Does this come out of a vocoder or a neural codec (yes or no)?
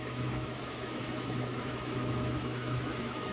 yes